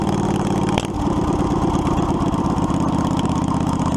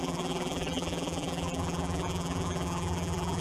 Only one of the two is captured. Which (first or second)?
first